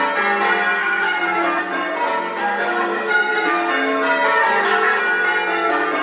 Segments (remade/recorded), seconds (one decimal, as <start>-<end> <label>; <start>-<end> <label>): 0.0-0.8 recorded; 0.8-1.6 remade; 1.6-2.4 recorded; 2.4-3.7 remade; 3.7-4.4 recorded; 4.4-5.0 remade; 5.0-6.0 recorded